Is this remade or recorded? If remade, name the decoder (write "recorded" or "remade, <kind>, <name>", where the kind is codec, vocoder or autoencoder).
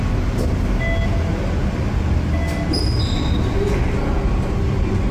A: recorded